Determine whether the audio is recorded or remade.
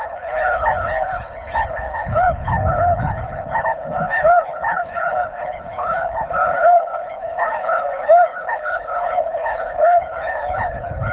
remade